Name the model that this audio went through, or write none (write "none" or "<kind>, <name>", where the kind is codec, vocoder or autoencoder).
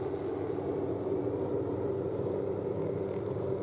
none